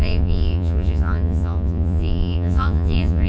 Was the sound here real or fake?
fake